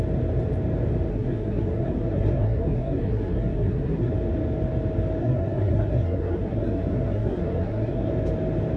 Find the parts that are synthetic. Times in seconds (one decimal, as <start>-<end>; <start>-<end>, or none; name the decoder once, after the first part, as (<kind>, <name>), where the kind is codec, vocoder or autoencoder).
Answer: 1.1-4.1 (codec, SNAC); 5.2-8.1